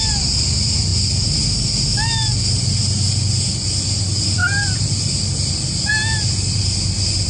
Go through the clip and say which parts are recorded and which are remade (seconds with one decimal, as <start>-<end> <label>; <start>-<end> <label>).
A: 0.0-7.3 recorded